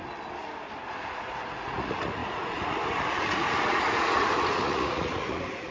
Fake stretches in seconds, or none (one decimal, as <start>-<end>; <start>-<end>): 1.0-5.7